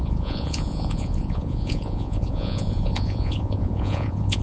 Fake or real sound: fake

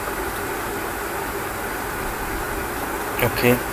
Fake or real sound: real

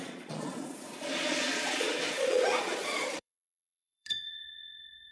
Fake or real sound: fake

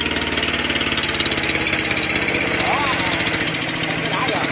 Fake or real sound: real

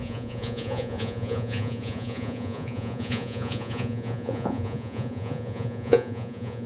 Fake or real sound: fake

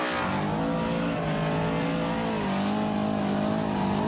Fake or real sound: real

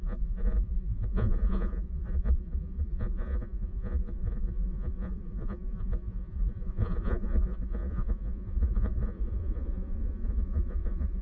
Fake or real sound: fake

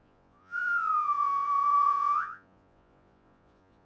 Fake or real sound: fake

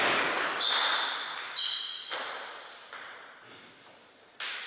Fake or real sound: real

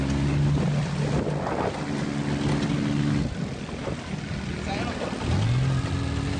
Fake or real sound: real